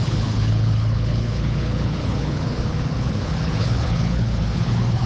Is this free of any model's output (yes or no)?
no